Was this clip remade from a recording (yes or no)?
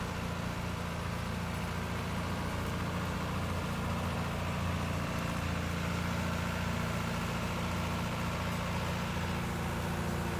no